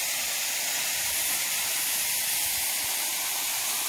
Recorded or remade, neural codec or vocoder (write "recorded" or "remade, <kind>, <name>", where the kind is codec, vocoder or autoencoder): recorded